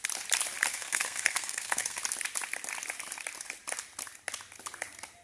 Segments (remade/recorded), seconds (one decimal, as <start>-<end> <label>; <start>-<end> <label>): 0.0-0.7 recorded; 0.7-2.0 remade; 2.0-5.2 recorded